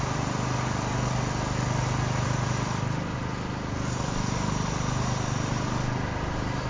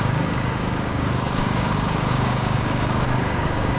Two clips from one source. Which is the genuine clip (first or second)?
first